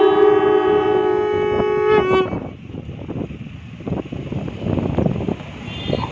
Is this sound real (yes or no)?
yes